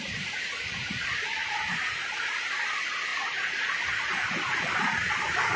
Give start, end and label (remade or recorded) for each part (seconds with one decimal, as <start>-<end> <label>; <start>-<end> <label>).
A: 0.0-5.6 recorded